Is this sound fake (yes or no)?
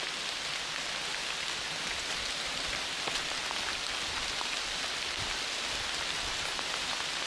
no